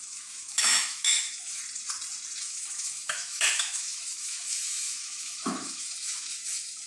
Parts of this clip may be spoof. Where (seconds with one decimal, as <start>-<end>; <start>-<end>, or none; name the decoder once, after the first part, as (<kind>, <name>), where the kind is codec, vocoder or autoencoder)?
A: 0.0-1.6 (autoencoder, DAC-VAE); 2.4-6.9